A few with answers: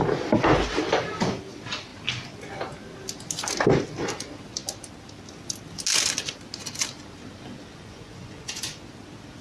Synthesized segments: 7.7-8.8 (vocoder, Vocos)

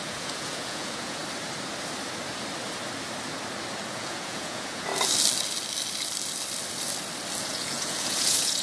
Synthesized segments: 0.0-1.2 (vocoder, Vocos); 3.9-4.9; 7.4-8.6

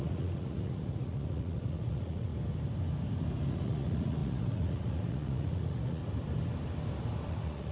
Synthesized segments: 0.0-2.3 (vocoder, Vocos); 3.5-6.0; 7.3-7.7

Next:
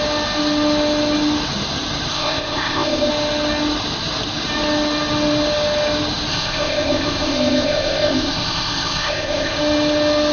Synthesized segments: 2.1-3.1 (codec, ZipCodec); 6.3-9.6